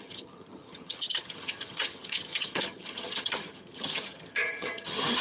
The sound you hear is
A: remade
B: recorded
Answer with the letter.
A